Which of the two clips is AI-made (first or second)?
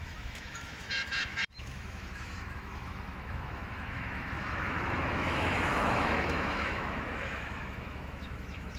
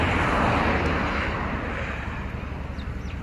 first